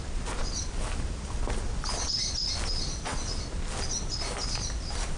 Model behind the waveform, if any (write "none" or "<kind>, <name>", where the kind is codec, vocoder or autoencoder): none